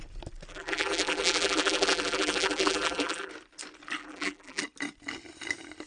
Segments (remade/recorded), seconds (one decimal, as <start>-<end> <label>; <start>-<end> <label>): 0.0-0.5 recorded; 0.5-3.3 remade; 3.3-4.0 recorded; 4.0-4.6 remade; 4.6-5.9 recorded